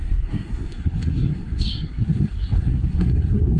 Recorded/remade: remade